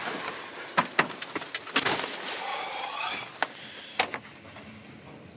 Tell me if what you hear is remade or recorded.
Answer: recorded